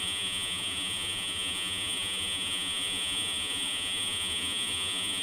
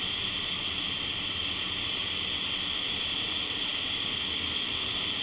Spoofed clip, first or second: first